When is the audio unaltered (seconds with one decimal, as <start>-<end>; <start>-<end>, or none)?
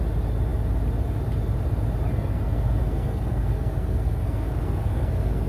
0.0-2.1